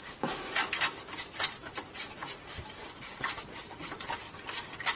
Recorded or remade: remade